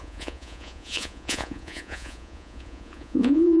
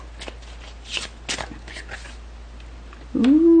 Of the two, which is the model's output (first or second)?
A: first